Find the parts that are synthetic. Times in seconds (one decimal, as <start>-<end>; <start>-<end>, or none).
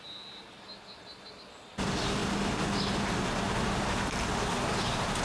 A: none